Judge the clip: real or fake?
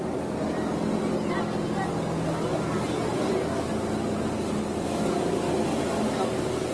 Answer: real